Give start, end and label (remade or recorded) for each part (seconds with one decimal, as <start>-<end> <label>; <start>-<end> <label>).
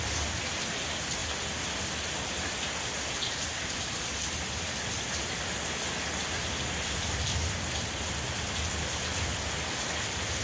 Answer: 0.0-10.4 recorded